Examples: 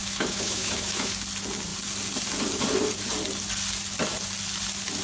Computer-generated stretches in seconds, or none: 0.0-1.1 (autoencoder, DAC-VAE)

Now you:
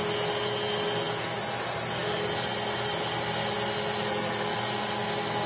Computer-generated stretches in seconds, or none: none

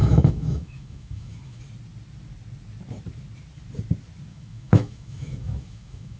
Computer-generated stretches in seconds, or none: 0.0-1.6 (autoencoder, DAC-VAE); 4.3-6.2

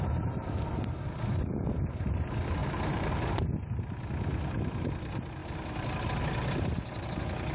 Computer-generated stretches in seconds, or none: none

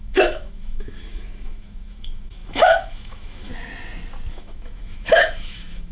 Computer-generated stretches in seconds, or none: 0.0-3.5 (autoencoder, DAC-VAE); 4.3-5.9

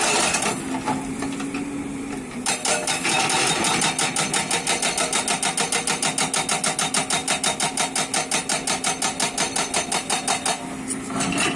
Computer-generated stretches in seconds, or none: none

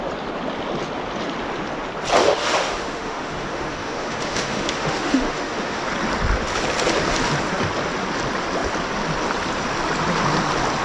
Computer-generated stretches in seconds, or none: 2.2-5.8 (autoencoder, DAC-VAE)